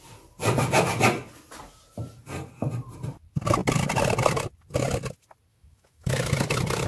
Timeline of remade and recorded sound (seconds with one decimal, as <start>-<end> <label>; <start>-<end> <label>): 0.0-5.5 recorded; 5.5-6.1 remade; 6.1-6.9 recorded